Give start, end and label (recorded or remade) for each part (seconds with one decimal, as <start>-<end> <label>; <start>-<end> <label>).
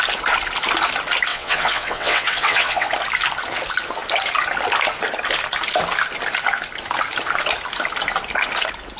0.0-1.3 recorded; 1.3-2.9 remade; 2.9-9.0 recorded